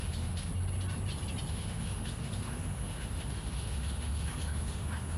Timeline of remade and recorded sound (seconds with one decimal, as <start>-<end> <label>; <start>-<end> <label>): 0.0-0.5 remade; 0.5-1.5 recorded; 1.5-5.2 remade